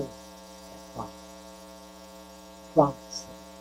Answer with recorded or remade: remade